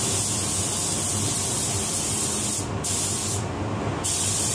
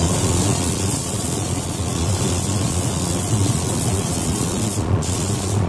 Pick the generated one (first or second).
second